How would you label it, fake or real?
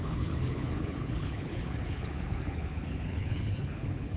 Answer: fake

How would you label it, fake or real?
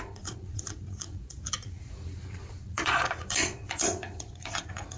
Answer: fake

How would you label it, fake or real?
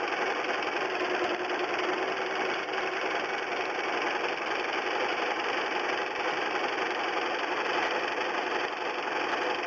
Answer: real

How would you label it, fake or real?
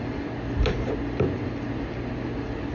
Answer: real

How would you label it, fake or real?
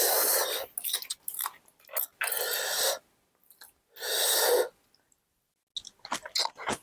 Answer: real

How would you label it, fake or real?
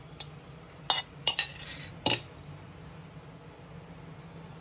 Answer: real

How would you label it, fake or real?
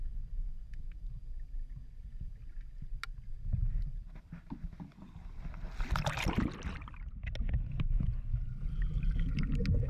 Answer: real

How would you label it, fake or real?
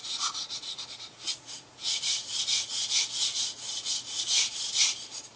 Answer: fake